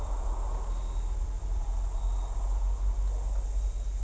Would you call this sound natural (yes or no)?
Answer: yes